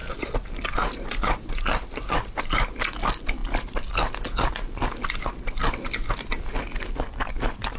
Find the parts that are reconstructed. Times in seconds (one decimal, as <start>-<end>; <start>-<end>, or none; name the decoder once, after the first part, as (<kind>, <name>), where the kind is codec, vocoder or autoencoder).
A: none